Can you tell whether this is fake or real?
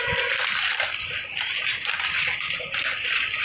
real